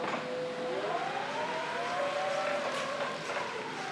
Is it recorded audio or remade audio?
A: recorded